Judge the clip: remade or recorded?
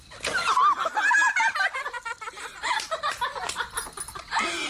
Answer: recorded